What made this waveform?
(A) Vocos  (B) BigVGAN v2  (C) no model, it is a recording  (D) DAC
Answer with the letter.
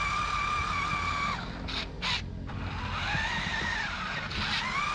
C